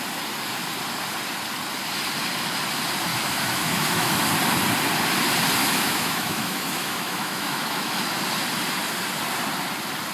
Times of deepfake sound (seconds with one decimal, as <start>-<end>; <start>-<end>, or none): 3.1-4.2; 5.6-8.0